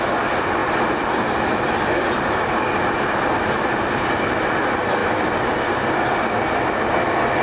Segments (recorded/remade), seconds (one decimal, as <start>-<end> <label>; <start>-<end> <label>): 0.0-5.0 recorded; 5.0-5.7 remade; 5.7-7.4 recorded